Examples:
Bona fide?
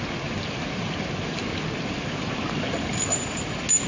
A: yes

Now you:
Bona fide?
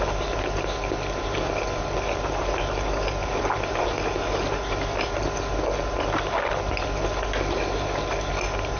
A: yes